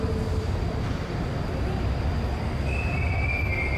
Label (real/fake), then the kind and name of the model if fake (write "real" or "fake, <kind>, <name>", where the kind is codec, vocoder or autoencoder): real